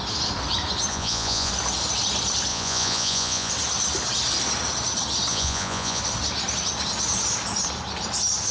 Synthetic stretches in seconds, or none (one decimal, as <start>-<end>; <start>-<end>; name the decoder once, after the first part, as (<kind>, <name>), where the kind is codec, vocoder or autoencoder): 0.9-1.5 (vocoder, Vocos); 2.5-3.5; 5.3-6.0